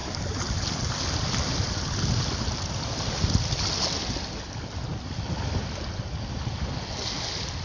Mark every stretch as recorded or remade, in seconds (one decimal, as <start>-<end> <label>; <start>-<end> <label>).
0.0-7.6 recorded